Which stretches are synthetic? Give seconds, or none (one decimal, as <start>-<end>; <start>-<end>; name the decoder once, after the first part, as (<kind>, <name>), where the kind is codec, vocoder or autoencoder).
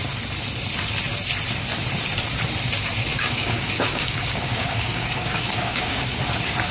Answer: 3.1-6.2 (codec, DAC)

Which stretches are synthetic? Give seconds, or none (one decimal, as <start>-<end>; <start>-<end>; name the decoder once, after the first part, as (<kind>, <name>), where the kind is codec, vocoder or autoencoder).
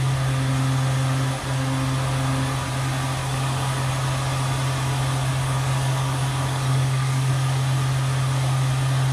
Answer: 3.2-3.9 (codec, DAC); 5.3-7.3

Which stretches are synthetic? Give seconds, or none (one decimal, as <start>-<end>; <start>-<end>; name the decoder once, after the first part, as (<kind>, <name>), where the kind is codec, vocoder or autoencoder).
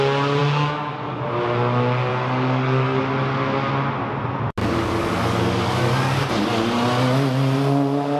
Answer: 0.4-1.2 (codec, DAC); 2.1-3.0; 4.6-6.3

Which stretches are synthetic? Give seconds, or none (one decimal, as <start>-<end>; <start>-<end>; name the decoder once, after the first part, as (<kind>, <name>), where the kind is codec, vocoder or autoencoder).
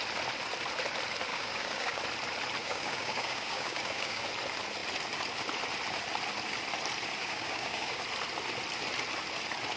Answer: 1.3-2.0 (codec, DAC); 2.6-4.2; 7.2-8.0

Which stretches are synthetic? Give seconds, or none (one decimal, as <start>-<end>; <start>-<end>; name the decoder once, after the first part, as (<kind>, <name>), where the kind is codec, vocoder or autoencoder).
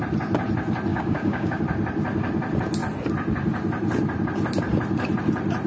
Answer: 0.9-1.6 (codec, DAC)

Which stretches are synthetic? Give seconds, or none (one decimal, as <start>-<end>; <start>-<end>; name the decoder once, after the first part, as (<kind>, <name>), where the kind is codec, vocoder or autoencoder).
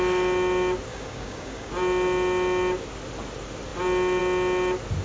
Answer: 0.9-1.7 (codec, DAC)